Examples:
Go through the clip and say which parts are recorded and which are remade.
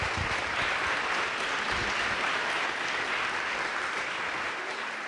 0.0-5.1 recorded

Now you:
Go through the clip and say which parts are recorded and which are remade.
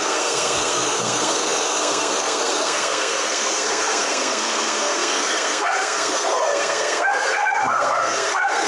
0.0-8.7 remade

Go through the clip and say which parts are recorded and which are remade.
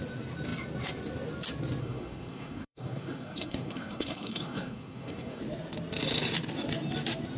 0.0-1.8 recorded; 1.8-5.4 remade; 5.4-7.4 recorded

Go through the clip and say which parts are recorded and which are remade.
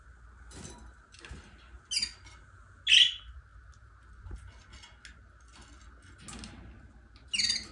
0.0-7.7 recorded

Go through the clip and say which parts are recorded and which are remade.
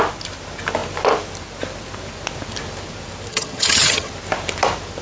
0.0-3.3 recorded; 3.3-4.1 remade; 4.1-5.0 recorded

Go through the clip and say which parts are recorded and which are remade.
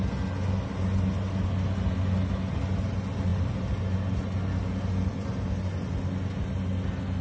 0.0-7.2 recorded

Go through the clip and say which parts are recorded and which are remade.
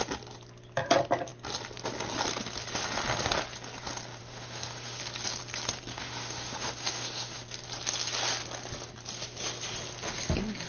0.0-4.2 recorded; 4.2-5.0 remade; 5.0-5.9 recorded; 5.9-7.4 remade; 7.4-10.7 recorded